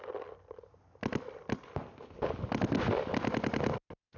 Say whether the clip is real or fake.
real